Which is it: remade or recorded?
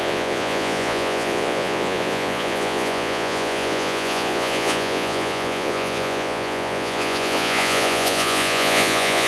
remade